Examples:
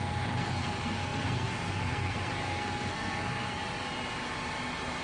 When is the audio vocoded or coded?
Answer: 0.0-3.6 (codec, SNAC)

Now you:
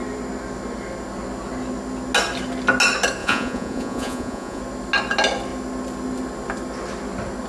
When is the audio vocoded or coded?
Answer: 3.2-4.6 (vocoder, Vocos)

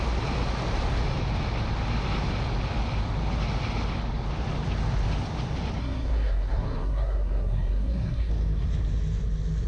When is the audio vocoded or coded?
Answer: 5.8-8.3 (codec, SNAC)

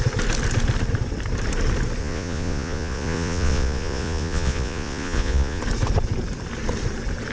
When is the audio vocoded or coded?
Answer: 2.0-5.6 (vocoder, Vocos)

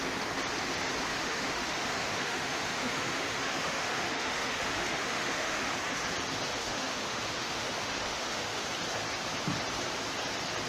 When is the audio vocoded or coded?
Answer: 1.1-5.7 (autoencoder, DAC-VAE); 6.6-8.7